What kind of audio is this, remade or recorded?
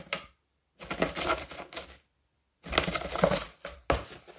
recorded